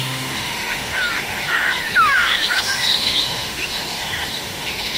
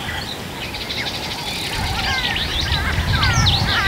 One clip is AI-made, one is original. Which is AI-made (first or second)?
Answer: first